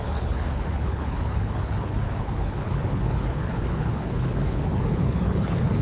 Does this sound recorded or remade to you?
remade